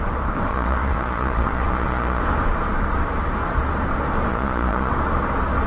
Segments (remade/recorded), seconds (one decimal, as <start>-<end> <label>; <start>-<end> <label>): 0.0-0.5 recorded; 0.5-2.2 remade; 2.2-4.3 recorded; 4.3-4.9 remade; 4.9-5.7 recorded